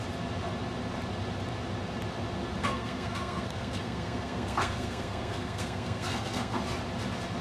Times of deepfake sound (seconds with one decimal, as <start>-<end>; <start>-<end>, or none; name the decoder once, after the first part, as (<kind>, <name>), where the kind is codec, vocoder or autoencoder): 2.6-6.6 (codec, SNAC)